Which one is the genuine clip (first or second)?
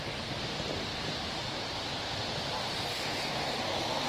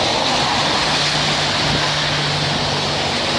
second